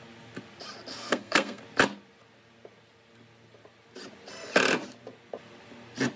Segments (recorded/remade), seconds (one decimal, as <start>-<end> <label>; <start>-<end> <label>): 0.0-0.9 recorded; 0.9-1.6 remade; 1.6-6.2 recorded